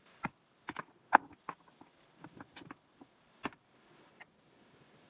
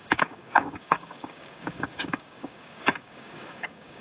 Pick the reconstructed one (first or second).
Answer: second